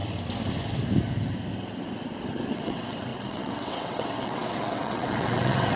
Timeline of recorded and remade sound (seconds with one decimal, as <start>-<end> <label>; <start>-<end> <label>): 0.0-2.5 recorded; 2.5-5.8 remade